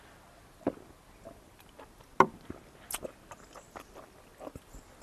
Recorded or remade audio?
recorded